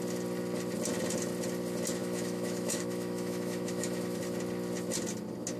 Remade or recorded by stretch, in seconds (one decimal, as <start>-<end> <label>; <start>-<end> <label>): 0.0-2.0 recorded; 2.0-4.2 remade; 4.2-5.6 recorded